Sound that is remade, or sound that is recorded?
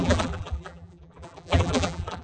remade